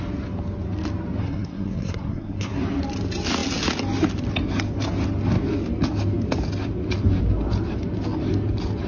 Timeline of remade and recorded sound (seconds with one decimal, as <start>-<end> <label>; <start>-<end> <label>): 0.0-1.2 recorded; 1.2-2.6 remade; 2.6-8.9 recorded